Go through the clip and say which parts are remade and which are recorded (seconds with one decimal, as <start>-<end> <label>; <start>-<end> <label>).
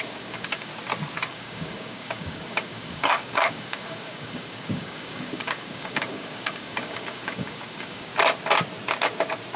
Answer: 0.0-0.7 remade; 0.7-1.3 recorded; 1.3-8.1 remade; 8.1-9.6 recorded